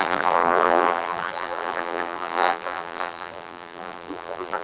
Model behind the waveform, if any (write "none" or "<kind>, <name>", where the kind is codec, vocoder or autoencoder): vocoder, BigVGAN v2